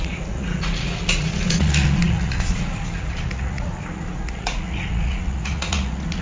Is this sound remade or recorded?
remade